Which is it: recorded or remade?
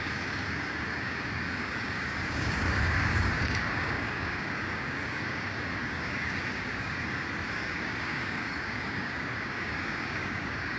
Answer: remade